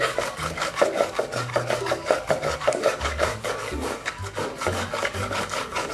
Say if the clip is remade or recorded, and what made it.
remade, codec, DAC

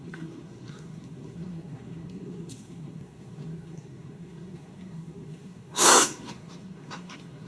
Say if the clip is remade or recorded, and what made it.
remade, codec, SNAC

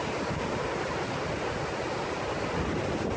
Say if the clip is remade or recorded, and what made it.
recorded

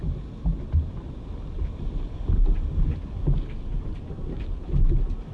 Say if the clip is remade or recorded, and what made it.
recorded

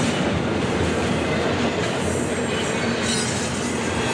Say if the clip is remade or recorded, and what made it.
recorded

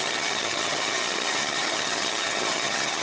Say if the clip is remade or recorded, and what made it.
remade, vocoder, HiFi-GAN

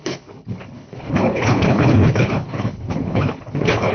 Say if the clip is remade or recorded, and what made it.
remade, codec, HILCodec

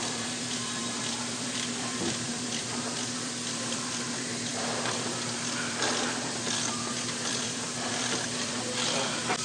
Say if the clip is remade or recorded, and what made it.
remade, vocoder, BigVGAN v2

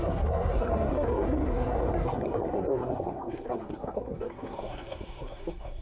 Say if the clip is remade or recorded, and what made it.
remade, codec, SNAC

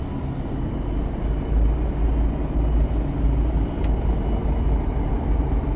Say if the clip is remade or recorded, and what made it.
recorded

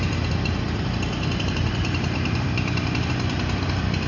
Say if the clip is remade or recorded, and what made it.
remade, vocoder, BigVGAN v2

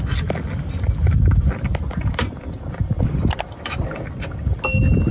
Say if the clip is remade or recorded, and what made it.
recorded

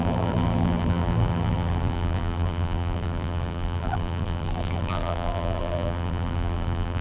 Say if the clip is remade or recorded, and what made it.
remade, vocoder, BigVGAN v2